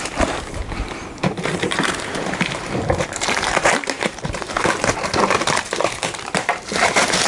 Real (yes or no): no